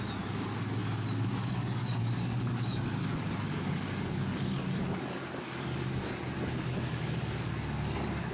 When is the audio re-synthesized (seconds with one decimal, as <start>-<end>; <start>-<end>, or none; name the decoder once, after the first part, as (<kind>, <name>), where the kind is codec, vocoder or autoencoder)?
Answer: 0.0-8.3 (codec, DAC)